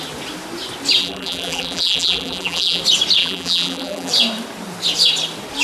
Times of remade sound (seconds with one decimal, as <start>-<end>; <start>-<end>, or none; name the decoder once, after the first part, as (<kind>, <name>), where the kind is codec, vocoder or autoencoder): 1.0-2.8 (vocoder, BigVGAN v2); 3.2-4.1